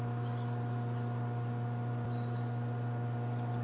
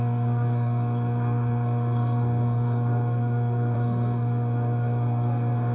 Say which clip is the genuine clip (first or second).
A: first